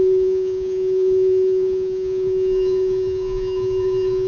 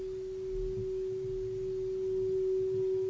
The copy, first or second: first